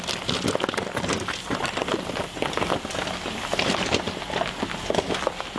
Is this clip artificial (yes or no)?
no